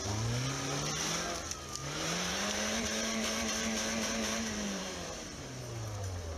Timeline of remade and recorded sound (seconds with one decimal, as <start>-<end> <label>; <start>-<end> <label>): 0.0-1.8 recorded; 1.8-5.6 remade; 5.6-6.4 recorded